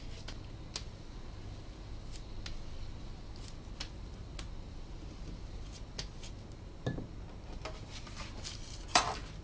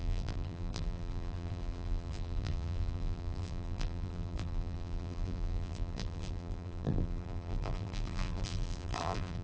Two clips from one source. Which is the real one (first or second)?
first